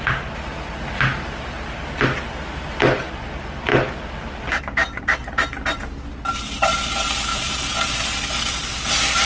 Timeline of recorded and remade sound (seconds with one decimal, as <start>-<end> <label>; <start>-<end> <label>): 0.0-7.3 recorded; 7.3-7.9 remade; 7.9-9.2 recorded